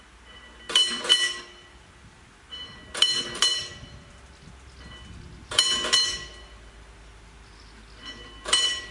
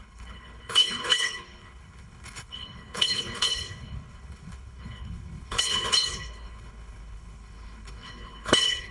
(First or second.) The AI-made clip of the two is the second